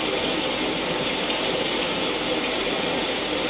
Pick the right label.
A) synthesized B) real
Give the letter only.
B